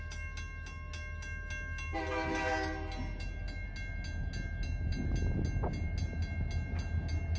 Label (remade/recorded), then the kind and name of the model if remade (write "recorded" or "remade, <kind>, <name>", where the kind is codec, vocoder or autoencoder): recorded